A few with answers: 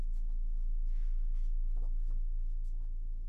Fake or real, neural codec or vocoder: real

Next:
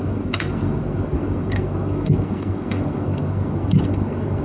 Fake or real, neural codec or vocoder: fake, codec, SNAC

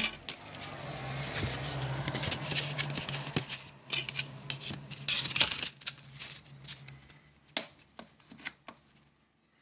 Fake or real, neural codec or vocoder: real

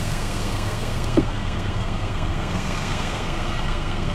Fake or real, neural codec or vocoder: fake, codec, SNAC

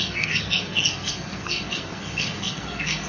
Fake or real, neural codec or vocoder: fake, codec, SNAC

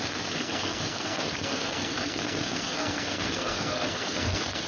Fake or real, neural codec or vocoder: fake, codec, SNAC